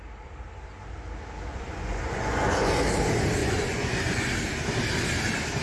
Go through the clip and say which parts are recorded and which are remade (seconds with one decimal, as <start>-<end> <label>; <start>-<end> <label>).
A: 0.0-1.5 recorded; 1.5-2.7 remade; 2.7-3.4 recorded; 3.4-4.3 remade; 4.3-5.6 recorded